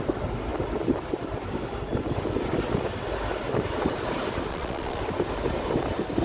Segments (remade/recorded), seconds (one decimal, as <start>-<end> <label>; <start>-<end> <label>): 0.0-4.5 recorded; 4.5-5.0 remade; 5.0-6.2 recorded